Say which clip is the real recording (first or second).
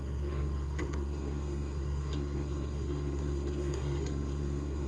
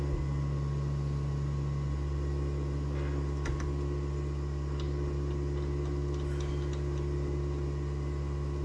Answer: second